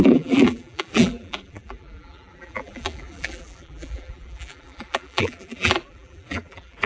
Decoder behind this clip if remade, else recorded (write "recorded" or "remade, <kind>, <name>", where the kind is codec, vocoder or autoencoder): remade, vocoder, BigVGAN v2